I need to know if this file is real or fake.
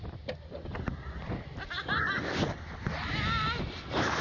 real